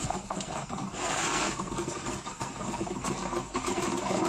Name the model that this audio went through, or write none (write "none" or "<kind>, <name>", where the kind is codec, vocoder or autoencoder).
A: codec, SNAC